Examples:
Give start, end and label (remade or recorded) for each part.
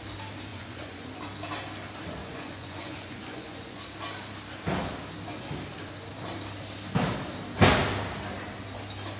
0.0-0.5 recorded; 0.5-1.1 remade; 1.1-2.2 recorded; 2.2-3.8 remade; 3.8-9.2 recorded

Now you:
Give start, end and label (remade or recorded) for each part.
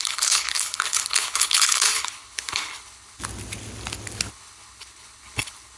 0.0-3.2 remade; 3.2-4.3 recorded; 4.3-5.8 remade